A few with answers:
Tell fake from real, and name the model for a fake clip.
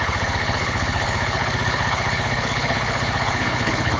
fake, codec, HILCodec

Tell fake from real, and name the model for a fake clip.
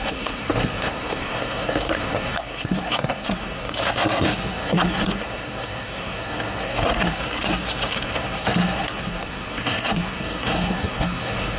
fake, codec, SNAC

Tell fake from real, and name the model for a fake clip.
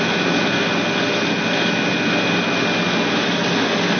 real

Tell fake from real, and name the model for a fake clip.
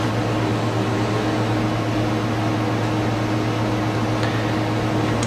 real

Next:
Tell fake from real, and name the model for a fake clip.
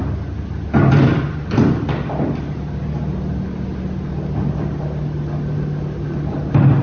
real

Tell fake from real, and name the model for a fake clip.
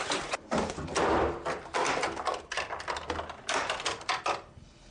real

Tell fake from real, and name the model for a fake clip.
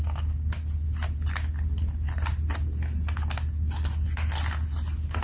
real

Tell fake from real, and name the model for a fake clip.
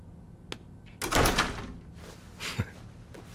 real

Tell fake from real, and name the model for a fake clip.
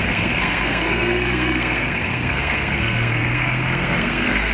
fake, codec, SNAC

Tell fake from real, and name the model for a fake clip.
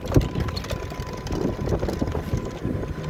real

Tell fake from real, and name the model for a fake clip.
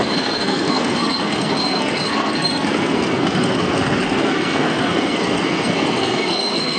fake, codec, SNAC